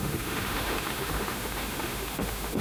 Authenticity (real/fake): fake